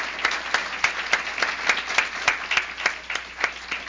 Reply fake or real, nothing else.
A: real